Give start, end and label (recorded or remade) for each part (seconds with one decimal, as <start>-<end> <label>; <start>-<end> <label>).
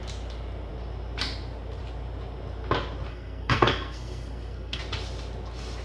0.0-3.1 recorded; 3.1-4.8 remade; 4.8-5.8 recorded